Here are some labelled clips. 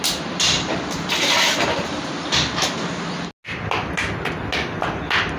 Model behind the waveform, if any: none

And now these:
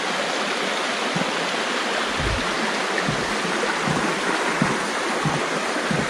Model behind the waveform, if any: none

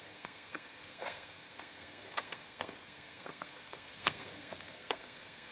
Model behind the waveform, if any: codec, SNAC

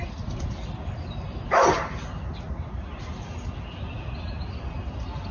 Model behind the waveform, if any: none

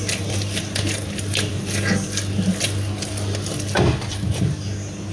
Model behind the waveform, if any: none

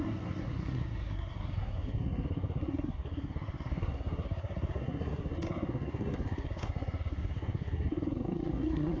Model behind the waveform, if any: codec, SNAC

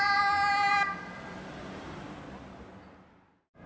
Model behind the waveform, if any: none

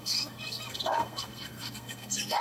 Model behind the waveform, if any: codec, SNAC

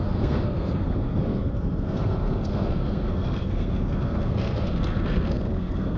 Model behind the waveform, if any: codec, SNAC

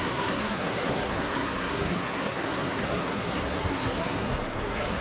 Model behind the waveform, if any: codec, SNAC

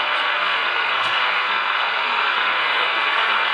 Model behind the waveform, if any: codec, SNAC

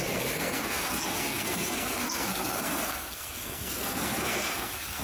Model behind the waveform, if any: codec, SNAC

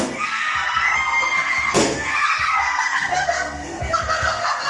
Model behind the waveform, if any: codec, SNAC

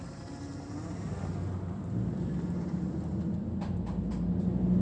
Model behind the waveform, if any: none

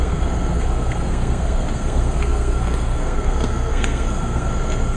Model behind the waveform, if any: codec, SNAC